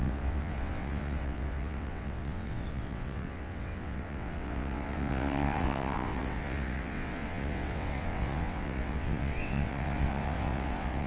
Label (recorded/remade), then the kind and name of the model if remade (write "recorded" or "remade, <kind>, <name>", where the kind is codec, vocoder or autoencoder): remade, vocoder, WaveNeXt